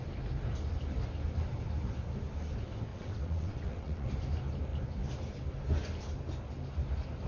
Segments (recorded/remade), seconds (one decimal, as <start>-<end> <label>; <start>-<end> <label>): 0.0-2.9 recorded; 2.9-4.1 remade; 4.1-7.3 recorded